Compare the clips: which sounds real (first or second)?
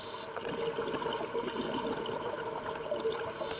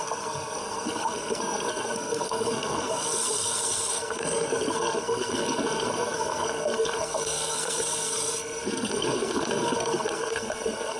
first